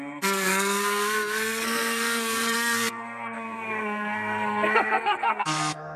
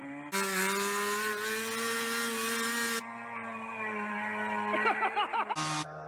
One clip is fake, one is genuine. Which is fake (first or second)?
first